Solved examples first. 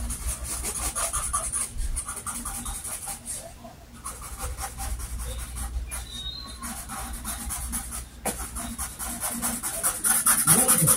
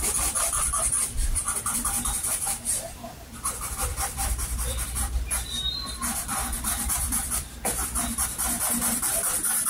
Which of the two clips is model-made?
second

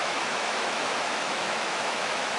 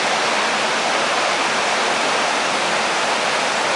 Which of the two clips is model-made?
first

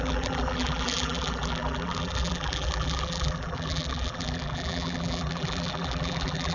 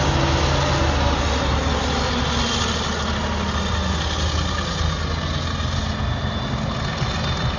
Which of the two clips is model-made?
first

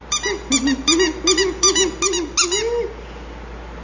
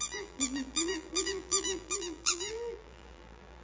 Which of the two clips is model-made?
second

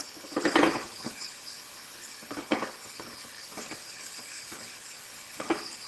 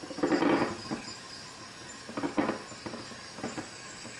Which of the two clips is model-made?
first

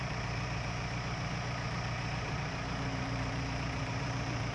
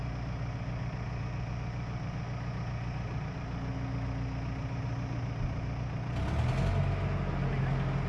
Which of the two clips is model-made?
first